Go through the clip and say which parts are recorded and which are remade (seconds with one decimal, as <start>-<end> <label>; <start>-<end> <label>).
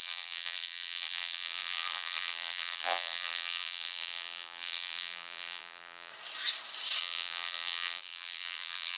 0.0-6.1 remade; 6.1-7.0 recorded; 7.0-9.0 remade